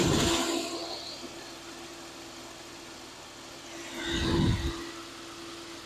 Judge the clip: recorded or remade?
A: recorded